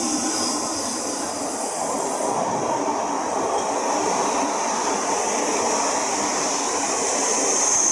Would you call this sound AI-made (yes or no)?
no